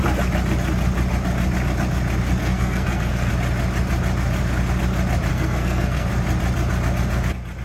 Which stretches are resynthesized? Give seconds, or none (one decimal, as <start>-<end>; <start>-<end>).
2.4-3.3; 5.3-6.1